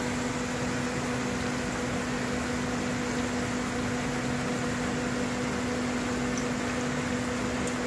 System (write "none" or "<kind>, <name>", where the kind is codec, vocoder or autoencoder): none